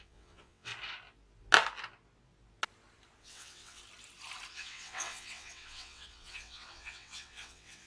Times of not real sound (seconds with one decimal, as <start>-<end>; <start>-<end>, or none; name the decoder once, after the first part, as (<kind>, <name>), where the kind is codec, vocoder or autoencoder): 0.0-0.7 (vocoder, WaveNeXt); 3.2-3.8; 4.5-7.9